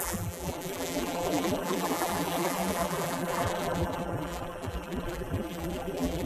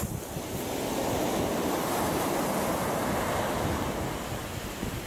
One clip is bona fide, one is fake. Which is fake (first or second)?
first